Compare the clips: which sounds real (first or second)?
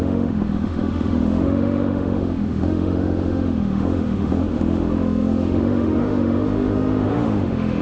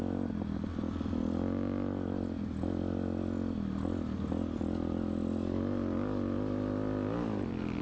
second